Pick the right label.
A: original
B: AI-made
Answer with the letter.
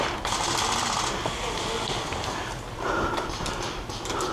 A